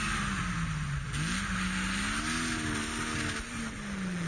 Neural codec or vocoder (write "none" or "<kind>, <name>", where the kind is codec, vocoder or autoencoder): none